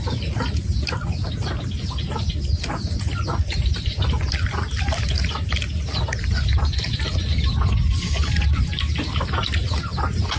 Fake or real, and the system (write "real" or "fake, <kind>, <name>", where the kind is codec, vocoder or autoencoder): real